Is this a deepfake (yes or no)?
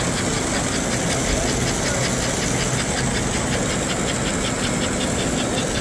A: no